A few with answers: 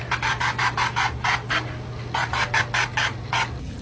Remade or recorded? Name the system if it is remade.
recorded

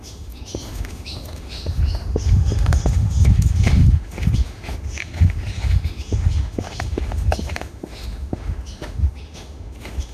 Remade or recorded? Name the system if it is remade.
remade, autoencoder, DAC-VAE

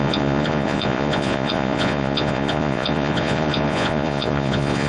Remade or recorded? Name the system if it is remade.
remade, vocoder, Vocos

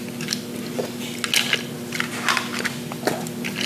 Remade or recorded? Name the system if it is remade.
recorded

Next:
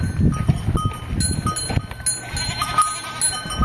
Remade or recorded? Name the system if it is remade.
recorded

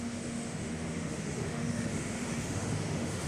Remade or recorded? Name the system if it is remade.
remade, autoencoder, DAC-VAE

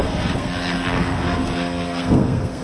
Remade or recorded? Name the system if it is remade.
remade, codec, SNAC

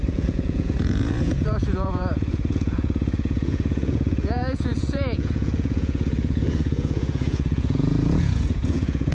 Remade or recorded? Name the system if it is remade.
remade, vocoder, Vocos